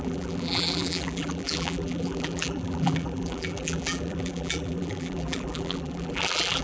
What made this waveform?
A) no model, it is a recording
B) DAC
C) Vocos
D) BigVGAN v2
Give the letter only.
D